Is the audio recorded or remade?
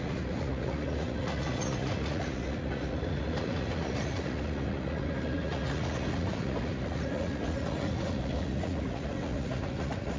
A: remade